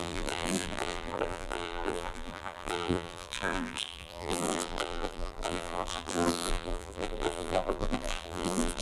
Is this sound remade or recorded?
remade